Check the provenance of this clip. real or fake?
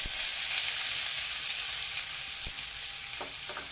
real